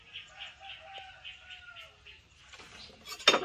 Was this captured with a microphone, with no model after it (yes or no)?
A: yes